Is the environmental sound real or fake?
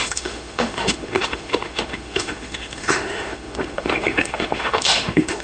fake